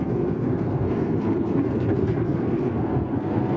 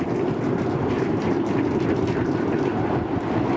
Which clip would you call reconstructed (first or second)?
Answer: first